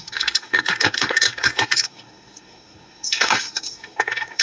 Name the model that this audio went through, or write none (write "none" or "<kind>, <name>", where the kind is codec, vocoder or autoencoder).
codec, SNAC